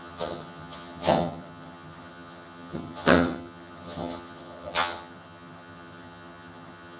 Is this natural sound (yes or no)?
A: no